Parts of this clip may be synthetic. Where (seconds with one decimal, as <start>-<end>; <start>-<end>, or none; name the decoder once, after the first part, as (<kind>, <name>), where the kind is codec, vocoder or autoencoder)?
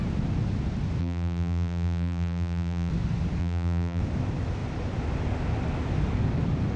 1.0-2.9 (vocoder, BigVGAN v2); 3.4-4.0